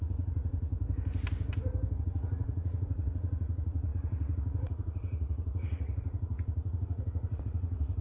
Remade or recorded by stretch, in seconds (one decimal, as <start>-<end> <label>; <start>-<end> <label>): 0.0-0.7 remade; 0.7-2.0 recorded; 2.0-8.0 remade